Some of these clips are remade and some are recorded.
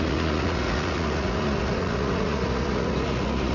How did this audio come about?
remade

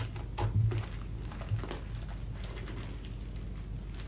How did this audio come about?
recorded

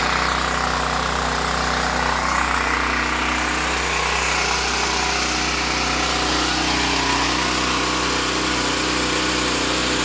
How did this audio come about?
recorded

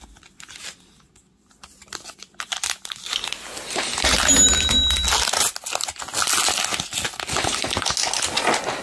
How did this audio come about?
recorded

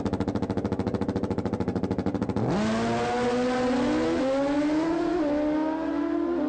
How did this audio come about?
recorded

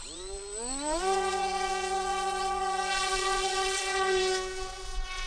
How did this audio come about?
remade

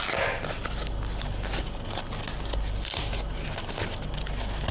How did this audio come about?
recorded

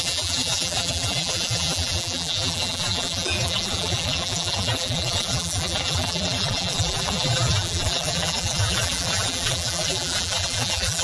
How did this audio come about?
remade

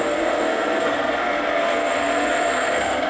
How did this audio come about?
remade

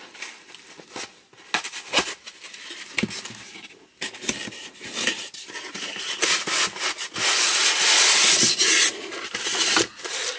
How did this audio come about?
recorded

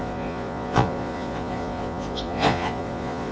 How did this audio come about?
remade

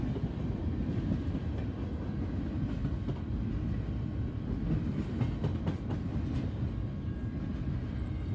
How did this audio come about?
recorded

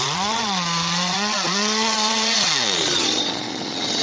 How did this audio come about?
remade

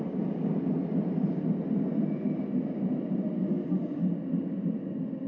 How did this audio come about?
recorded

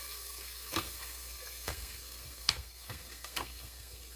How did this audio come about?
remade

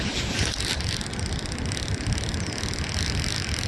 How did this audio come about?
recorded